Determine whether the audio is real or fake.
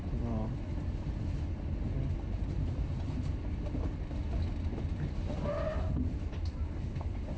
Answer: real